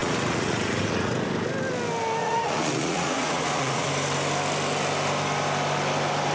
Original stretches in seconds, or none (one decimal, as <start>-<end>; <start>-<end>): 1.1-2.2; 3.9-6.3